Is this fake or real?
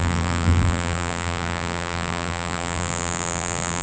fake